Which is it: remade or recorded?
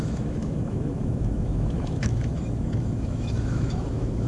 remade